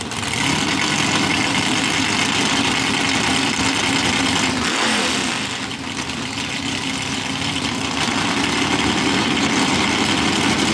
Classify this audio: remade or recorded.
recorded